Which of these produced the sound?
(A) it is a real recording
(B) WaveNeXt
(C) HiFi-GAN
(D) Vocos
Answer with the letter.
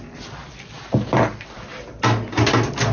A